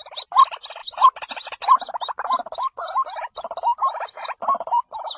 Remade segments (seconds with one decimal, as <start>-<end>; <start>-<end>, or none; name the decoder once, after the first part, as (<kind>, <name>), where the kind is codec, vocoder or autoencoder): 0.0-0.8 (vocoder, BigVGAN v2); 3.9-5.2